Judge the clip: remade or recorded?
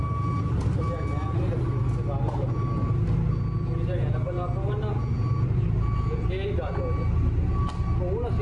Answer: recorded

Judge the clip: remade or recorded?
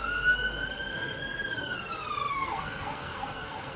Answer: remade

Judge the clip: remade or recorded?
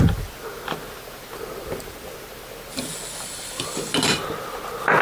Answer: recorded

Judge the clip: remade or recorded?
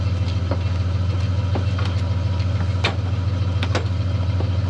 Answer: recorded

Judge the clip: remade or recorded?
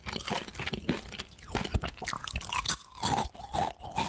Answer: recorded